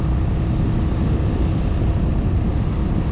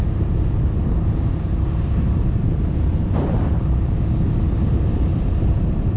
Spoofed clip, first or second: second